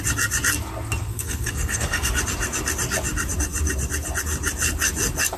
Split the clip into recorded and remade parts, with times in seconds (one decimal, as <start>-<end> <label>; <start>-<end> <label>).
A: 0.0-1.0 recorded; 1.0-2.1 remade; 2.1-5.4 recorded